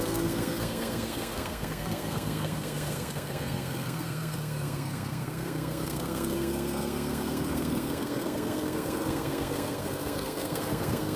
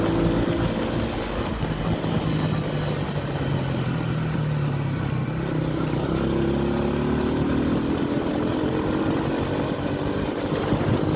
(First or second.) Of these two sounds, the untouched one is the second